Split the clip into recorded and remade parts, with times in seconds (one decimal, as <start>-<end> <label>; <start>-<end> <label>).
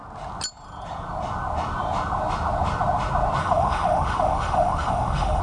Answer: 0.0-3.4 recorded; 3.4-5.4 remade